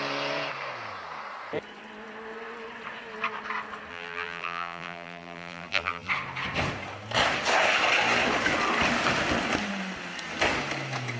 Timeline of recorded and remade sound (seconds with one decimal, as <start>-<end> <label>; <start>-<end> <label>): 0.0-3.9 recorded; 3.9-6.1 remade; 6.1-11.2 recorded